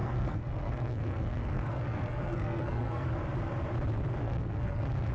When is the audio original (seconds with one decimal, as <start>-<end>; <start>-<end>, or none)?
3.1-4.2